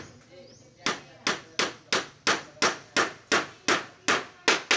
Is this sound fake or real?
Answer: real